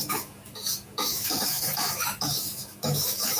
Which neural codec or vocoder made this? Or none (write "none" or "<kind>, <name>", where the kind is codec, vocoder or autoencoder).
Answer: autoencoder, DAC-VAE